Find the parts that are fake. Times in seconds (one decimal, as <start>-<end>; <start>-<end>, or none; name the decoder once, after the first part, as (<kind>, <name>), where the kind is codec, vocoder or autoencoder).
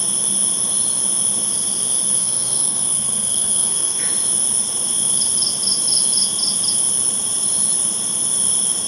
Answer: 2.2-4.0 (codec, SNAC)